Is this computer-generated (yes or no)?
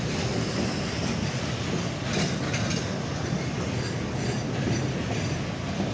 no